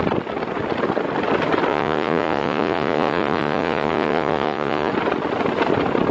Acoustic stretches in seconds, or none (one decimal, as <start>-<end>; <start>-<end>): 0.0-1.7; 4.9-6.1